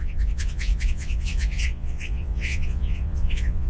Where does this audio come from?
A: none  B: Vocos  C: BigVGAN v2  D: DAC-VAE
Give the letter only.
B